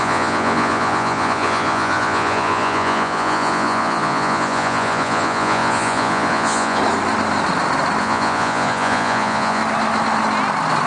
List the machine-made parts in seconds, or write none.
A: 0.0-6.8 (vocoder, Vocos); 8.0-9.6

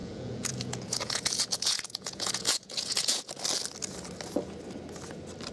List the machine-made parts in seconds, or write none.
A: 0.0-3.3 (vocoder, Vocos)

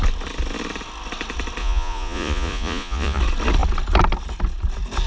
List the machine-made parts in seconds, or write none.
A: 1.6-3.2 (vocoder, Vocos)

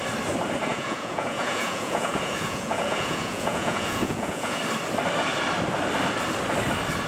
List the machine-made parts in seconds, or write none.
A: 0.7-4.6 (vocoder, Vocos)

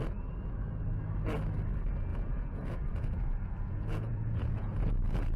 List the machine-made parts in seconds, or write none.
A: 2.1-4.9 (vocoder, Vocos)

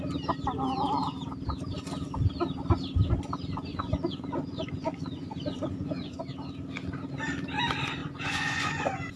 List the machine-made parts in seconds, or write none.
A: 3.7-6.2 (vocoder, Vocos); 8.0-9.2

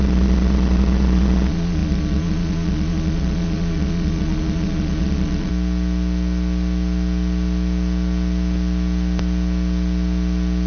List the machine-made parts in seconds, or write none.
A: 0.0-5.5 (vocoder, Vocos)